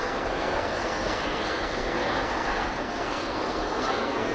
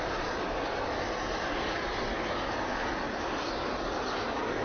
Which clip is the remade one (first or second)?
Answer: first